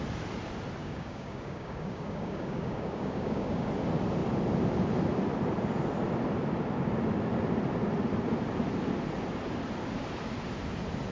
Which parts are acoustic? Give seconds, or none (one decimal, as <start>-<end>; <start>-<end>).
0.0-0.8; 3.7-11.1